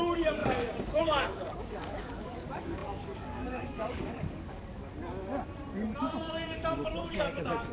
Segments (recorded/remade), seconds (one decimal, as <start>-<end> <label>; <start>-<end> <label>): 0.0-4.9 remade; 4.9-6.2 recorded; 6.2-7.7 remade